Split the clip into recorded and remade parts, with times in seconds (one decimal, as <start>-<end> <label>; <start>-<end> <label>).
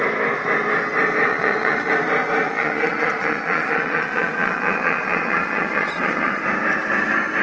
0.0-1.3 recorded; 1.3-1.9 remade; 1.9-2.4 recorded; 2.4-6.4 remade; 6.4-7.4 recorded